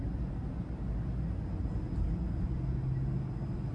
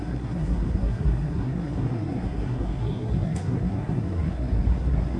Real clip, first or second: first